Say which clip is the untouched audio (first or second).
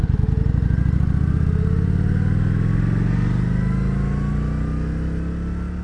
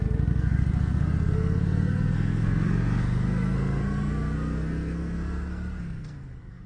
first